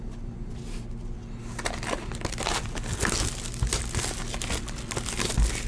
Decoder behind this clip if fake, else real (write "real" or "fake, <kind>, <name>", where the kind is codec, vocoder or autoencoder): real